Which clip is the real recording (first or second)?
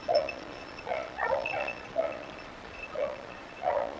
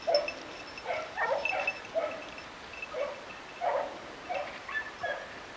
second